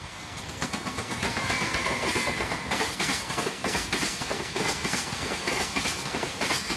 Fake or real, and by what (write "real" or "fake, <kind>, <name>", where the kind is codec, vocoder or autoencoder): fake, codec, SNAC